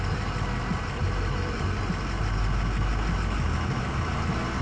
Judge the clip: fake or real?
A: real